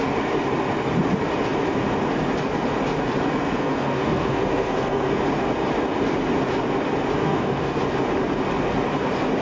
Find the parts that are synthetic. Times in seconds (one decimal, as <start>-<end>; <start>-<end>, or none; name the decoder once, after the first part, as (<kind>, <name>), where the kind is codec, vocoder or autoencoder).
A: 3.4-5.2 (codec, SNAC); 7.2-7.8